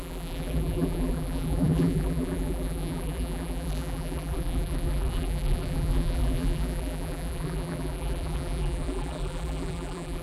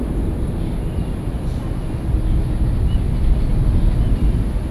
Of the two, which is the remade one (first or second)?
first